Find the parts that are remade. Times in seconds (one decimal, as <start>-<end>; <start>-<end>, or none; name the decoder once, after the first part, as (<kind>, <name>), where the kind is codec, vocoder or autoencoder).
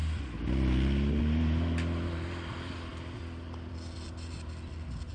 none